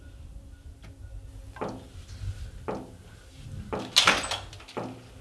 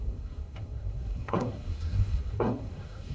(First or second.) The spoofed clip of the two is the second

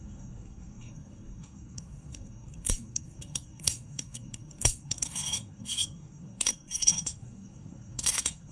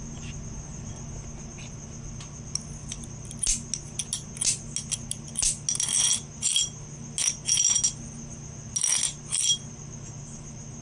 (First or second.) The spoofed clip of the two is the first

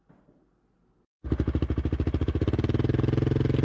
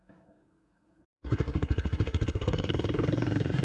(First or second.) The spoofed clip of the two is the second